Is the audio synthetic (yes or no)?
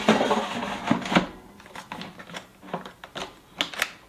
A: no